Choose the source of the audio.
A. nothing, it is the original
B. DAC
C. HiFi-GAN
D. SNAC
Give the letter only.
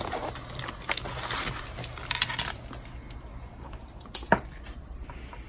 A